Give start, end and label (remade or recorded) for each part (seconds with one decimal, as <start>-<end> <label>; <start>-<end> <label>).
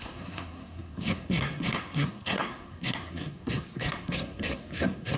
0.0-5.2 remade